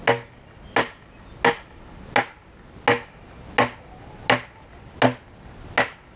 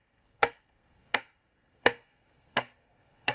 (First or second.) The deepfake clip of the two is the second